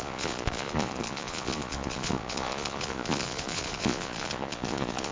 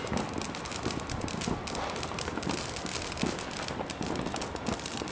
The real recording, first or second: second